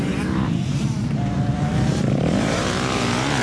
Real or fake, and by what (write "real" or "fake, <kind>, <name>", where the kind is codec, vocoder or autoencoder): fake, vocoder, BigVGAN v2